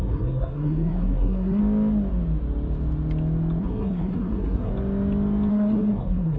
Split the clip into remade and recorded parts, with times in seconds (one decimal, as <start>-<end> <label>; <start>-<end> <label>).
0.0-1.6 remade; 1.6-3.6 recorded; 3.6-4.7 remade; 4.7-5.5 recorded; 5.5-6.4 remade